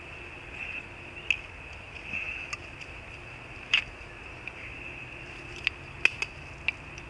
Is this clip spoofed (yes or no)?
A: no